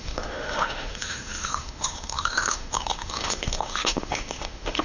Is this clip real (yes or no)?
no